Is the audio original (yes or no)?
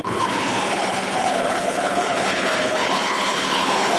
no